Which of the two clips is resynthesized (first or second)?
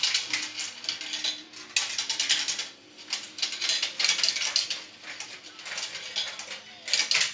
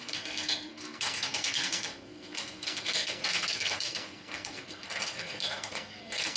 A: second